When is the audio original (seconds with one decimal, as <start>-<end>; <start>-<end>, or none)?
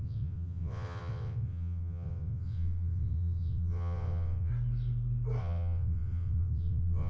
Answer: 4.5-5.4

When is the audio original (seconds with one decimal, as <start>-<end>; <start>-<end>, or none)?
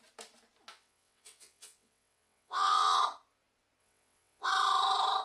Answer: 0.0-0.7; 3.0-3.8; 4.5-5.2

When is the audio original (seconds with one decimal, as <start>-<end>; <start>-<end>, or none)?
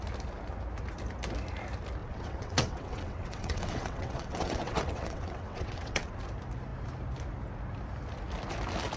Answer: 0.0-2.0; 6.1-9.0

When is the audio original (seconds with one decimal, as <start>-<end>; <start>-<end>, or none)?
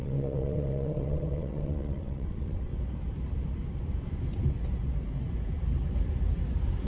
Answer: 2.7-6.9